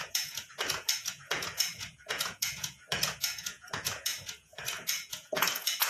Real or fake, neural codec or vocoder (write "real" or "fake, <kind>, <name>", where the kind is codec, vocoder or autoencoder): fake, vocoder, Vocos